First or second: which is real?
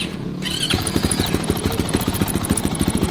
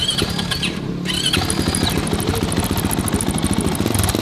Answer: second